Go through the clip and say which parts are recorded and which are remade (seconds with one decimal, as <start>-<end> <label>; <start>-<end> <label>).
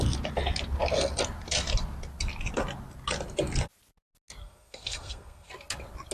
0.0-4.4 recorded; 4.4-5.5 remade; 5.5-6.1 recorded